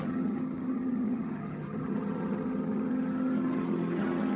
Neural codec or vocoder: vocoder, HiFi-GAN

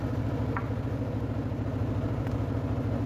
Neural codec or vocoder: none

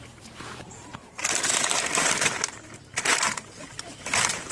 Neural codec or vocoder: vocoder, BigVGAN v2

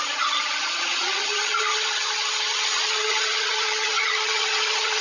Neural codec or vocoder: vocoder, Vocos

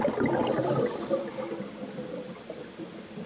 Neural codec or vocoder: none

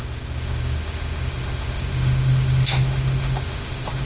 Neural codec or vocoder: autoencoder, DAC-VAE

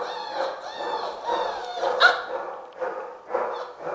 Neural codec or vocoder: none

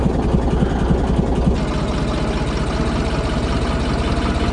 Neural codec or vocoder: none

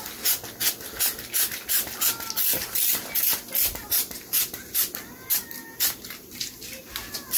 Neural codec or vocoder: none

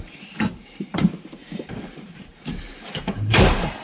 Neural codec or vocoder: vocoder, BigVGAN v2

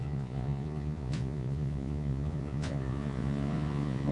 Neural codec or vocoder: vocoder, Vocos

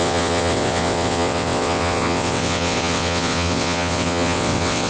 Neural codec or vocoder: vocoder, WaveNeXt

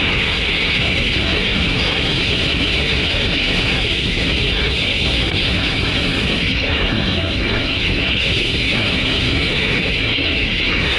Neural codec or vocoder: codec, SNAC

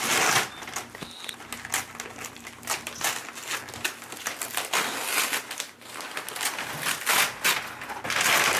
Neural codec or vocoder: none